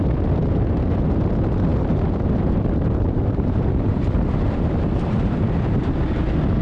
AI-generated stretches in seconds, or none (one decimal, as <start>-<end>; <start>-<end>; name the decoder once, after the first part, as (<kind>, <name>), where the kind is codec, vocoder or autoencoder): 1.7-5.7 (vocoder, BigVGAN v2)